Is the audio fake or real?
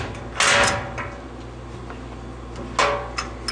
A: real